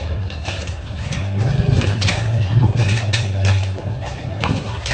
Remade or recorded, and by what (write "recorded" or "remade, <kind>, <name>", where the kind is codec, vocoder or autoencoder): remade, codec, SNAC